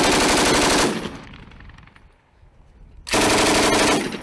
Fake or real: real